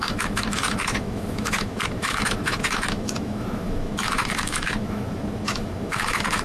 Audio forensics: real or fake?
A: fake